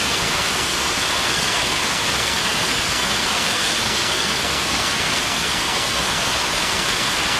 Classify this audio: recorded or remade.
remade